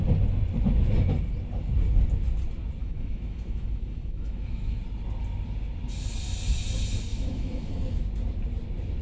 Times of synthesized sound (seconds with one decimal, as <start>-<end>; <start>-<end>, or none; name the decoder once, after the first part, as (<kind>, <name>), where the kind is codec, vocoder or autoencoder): 2.8-4.8 (autoencoder, DAC-VAE); 7.1-7.7